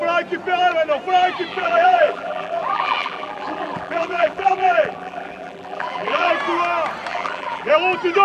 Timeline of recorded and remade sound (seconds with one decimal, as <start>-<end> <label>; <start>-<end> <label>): 0.0-1.5 recorded; 1.5-6.3 remade; 6.3-7.1 recorded; 7.1-7.7 remade; 7.7-8.2 recorded